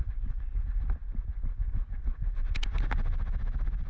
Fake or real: real